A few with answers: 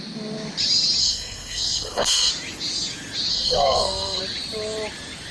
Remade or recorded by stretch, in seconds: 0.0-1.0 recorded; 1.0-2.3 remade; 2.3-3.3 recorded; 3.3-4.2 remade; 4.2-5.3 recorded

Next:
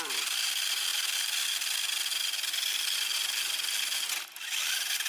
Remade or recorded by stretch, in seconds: 0.0-5.1 recorded

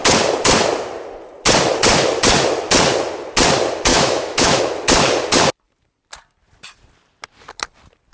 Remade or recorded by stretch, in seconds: 0.0-3.9 recorded; 3.9-4.6 remade; 4.6-8.1 recorded

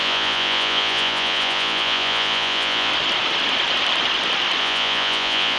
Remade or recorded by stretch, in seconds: 0.0-2.9 remade; 2.9-4.6 recorded; 4.6-5.6 remade

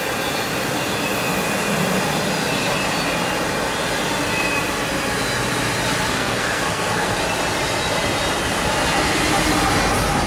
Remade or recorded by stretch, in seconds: 0.0-6.1 recorded; 6.1-7.2 remade; 7.2-10.3 recorded

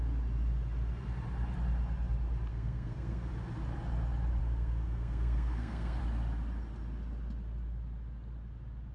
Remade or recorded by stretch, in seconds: 0.0-2.5 recorded; 2.5-3.3 remade; 3.3-4.4 recorded; 4.4-6.0 remade; 6.0-8.9 recorded